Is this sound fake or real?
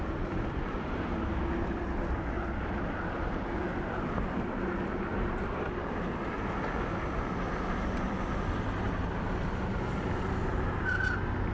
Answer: real